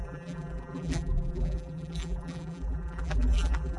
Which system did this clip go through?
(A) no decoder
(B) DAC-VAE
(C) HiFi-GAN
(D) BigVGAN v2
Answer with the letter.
D